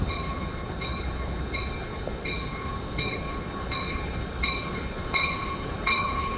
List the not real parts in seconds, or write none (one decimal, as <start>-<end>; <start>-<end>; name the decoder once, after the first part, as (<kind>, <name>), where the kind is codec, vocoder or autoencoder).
0.0-6.4 (codec, HILCodec)